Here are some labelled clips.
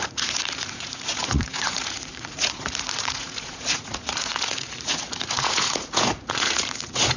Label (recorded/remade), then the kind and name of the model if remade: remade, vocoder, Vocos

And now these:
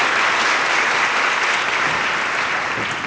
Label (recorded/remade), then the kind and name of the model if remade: recorded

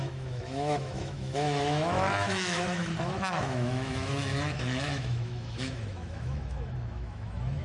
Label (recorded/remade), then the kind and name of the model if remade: remade, autoencoder, DAC-VAE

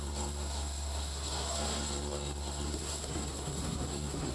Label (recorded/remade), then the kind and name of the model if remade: remade, codec, SNAC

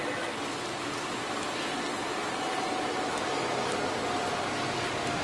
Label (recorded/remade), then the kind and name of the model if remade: recorded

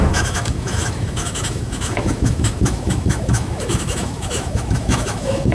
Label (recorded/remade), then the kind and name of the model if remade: remade, autoencoder, DAC-VAE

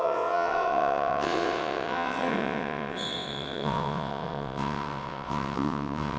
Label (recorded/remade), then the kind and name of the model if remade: remade, vocoder, WaveNeXt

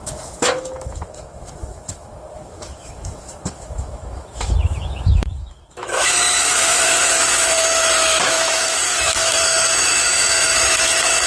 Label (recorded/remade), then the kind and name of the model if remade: remade, autoencoder, DAC-VAE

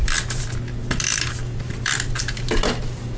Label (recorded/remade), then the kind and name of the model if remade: remade, vocoder, BigVGAN v2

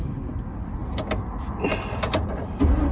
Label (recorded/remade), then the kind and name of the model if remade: recorded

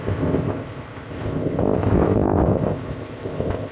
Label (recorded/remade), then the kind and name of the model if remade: remade, codec, ZipCodec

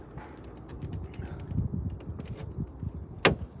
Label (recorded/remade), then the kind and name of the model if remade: recorded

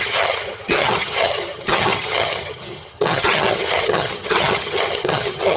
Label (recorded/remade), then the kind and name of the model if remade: remade, vocoder, HiFi-GAN